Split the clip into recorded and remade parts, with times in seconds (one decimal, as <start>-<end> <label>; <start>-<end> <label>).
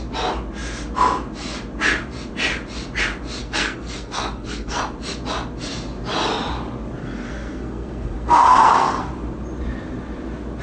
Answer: 0.0-3.4 recorded; 3.4-4.8 remade; 4.8-7.0 recorded; 7.0-9.1 remade; 9.1-10.6 recorded